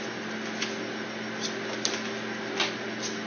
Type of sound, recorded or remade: recorded